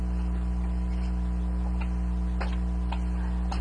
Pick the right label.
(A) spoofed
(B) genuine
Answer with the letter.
B